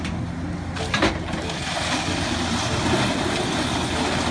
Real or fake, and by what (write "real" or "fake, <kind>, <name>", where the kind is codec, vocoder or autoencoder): real